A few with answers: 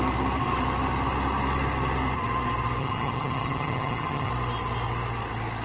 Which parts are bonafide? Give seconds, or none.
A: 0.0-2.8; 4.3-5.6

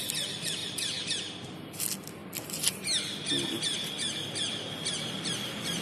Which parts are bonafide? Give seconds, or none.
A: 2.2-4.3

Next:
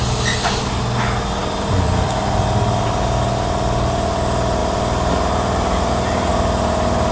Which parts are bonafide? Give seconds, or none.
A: 0.0-1.4; 2.4-7.1

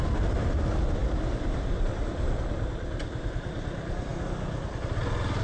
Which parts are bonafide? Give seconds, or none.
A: 0.0-5.4

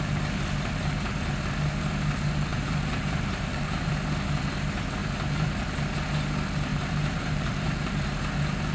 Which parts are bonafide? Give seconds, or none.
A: 0.0-2.5; 3.9-5.0; 5.6-6.7; 7.9-8.7